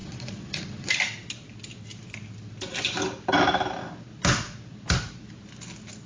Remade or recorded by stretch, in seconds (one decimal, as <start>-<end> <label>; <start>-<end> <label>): 0.0-0.9 remade; 0.9-6.1 recorded